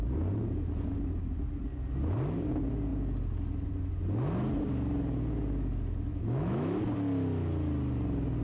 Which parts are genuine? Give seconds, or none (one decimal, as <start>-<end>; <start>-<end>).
0.0-6.1; 6.8-8.4